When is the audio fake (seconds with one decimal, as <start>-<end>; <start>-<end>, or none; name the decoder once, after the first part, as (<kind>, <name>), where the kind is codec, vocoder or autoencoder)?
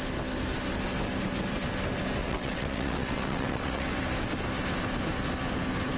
2.2-3.9 (vocoder, WaveNeXt)